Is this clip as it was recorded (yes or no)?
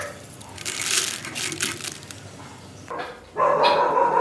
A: yes